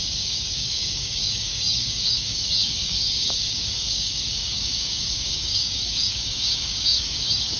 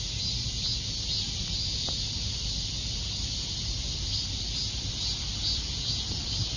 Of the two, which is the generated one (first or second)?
first